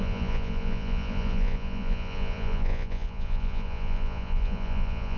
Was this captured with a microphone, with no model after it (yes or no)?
no